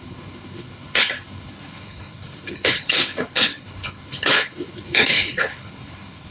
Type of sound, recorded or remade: remade